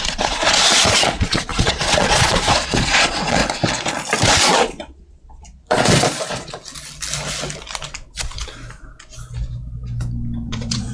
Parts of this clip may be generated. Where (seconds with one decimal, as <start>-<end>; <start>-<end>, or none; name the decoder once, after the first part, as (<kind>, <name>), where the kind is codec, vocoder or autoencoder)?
0.0-3.4 (vocoder, Vocos); 4.4-6.6; 10.5-10.9